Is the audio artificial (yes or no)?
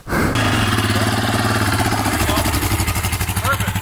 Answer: no